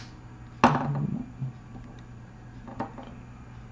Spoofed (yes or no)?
no